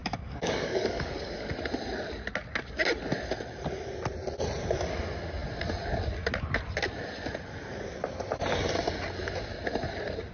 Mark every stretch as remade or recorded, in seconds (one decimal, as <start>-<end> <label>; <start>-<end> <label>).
0.0-1.5 remade; 1.5-10.3 recorded